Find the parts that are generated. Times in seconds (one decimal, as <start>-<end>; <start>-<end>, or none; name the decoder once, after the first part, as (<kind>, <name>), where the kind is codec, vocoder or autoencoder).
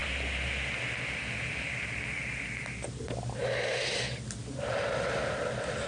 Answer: none